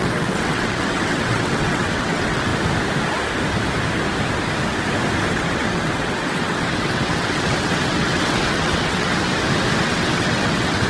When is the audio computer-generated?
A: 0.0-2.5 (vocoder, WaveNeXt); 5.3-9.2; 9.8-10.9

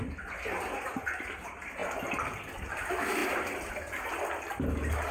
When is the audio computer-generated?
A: none

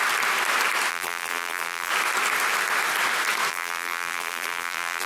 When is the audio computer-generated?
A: 0.9-1.9 (vocoder, BigVGAN v2); 3.5-5.1

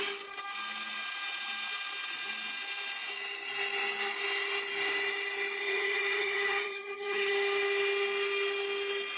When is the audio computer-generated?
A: 5.6-7.3 (vocoder, HiFi-GAN)